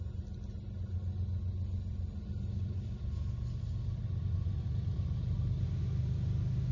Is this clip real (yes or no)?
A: yes